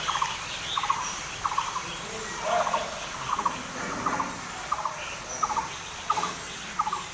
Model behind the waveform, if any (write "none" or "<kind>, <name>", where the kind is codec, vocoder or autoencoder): none